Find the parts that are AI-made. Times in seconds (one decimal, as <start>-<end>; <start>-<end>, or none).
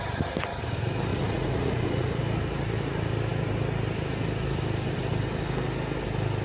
1.1-2.2